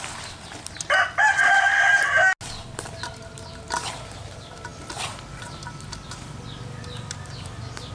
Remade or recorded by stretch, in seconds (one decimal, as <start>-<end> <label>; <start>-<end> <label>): 0.0-7.9 recorded